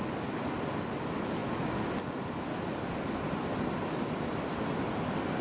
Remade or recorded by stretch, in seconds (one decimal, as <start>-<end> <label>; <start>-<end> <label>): 0.0-5.4 recorded